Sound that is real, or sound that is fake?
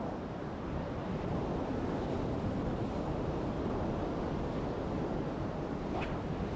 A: real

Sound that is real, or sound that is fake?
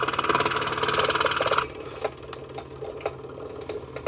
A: real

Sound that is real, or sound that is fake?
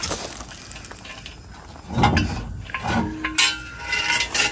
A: real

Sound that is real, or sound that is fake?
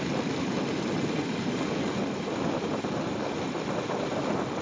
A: real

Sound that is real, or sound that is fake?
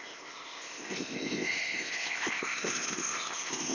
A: fake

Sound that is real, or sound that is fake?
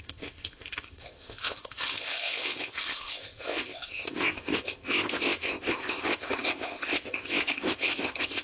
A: fake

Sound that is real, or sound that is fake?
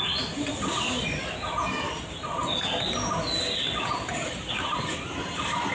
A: real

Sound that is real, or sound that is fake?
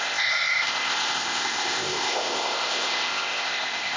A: fake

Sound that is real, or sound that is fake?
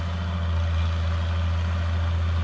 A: real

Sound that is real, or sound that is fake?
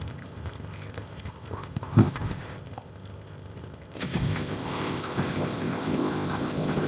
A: fake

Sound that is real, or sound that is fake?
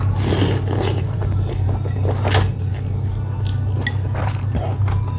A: real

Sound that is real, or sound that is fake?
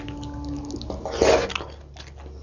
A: real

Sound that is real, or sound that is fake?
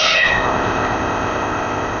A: fake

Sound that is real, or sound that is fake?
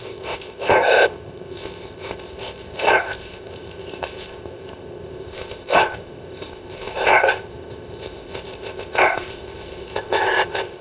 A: fake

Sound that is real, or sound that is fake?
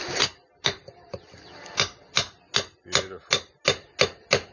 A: real